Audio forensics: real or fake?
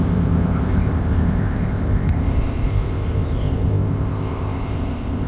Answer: fake